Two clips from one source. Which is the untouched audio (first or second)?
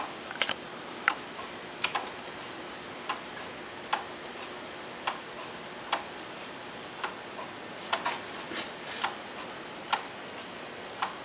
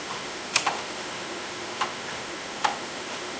first